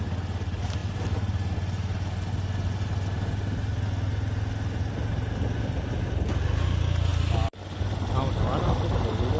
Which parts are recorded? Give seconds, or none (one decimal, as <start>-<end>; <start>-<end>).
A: 0.0-9.4